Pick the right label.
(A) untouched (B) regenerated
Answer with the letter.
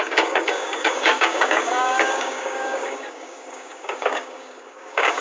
B